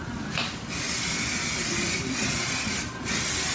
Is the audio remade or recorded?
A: recorded